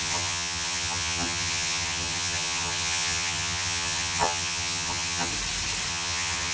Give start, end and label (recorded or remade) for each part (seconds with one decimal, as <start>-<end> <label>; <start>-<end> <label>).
0.0-5.3 remade; 5.3-5.9 recorded; 5.9-6.5 remade